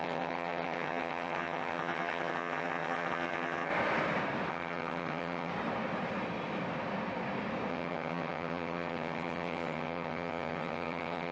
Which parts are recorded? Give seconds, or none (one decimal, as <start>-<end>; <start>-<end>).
3.7-4.5; 5.5-7.7